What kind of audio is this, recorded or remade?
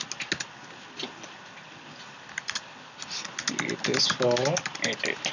recorded